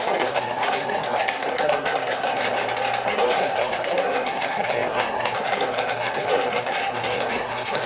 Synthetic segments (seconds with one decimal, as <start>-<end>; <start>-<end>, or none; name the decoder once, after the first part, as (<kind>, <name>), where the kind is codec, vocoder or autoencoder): 0.0-2.4 (codec, SNAC); 3.1-7.9